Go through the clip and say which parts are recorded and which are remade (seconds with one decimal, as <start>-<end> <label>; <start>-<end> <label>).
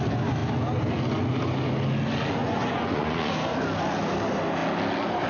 0.0-2.4 recorded; 2.4-3.3 remade; 3.3-5.3 recorded